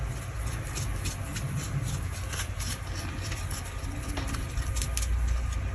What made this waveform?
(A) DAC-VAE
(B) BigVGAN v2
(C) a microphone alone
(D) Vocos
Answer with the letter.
C